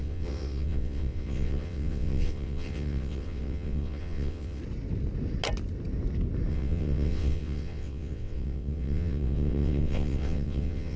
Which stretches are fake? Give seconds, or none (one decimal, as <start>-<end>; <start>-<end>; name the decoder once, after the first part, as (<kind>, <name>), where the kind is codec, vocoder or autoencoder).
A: 0.0-4.6 (vocoder, WaveNeXt); 6.5-11.0

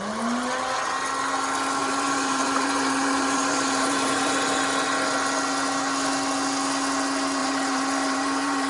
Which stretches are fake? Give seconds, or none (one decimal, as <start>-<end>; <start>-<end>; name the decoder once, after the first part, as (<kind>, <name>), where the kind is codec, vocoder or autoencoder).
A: 1.8-4.3 (vocoder, BigVGAN v2); 7.4-8.7

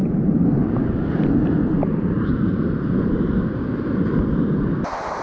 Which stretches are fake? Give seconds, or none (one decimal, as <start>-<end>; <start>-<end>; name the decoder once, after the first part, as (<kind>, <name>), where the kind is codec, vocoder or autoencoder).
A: 0.0-3.1 (vocoder, BigVGAN v2)